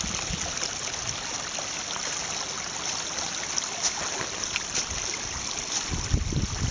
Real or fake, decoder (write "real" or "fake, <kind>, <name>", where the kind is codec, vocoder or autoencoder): real